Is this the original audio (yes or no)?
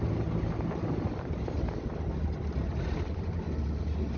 yes